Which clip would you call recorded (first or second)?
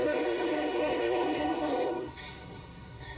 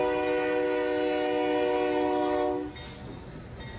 second